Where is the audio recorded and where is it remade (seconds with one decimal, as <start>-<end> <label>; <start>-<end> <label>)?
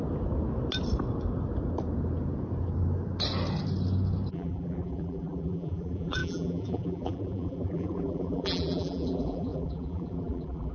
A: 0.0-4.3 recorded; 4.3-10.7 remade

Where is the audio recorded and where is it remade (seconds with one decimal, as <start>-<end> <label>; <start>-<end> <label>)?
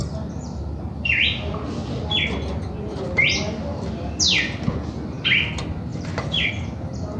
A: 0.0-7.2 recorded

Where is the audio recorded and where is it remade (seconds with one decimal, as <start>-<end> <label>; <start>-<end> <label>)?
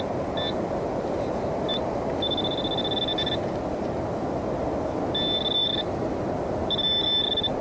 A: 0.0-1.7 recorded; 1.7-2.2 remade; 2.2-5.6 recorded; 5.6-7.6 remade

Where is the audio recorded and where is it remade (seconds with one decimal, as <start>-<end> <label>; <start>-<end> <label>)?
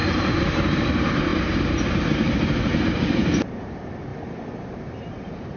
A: 0.0-4.1 remade; 4.1-4.7 recorded; 4.7-5.6 remade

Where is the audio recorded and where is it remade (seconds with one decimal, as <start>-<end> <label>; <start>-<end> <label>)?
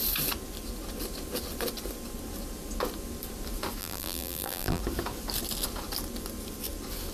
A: 0.0-3.8 recorded; 3.8-4.8 remade; 4.8-7.1 recorded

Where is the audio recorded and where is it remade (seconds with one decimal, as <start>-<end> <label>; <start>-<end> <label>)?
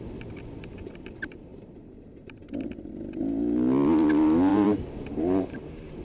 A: 0.0-1.5 recorded; 1.5-2.9 remade; 2.9-4.5 recorded; 4.5-6.0 remade